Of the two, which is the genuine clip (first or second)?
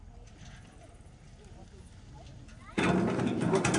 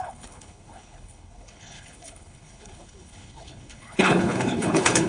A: first